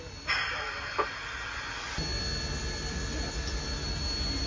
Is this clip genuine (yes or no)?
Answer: yes